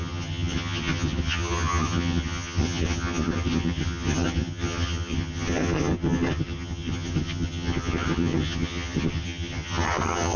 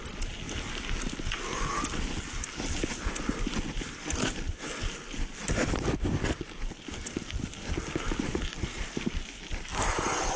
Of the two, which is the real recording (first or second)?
second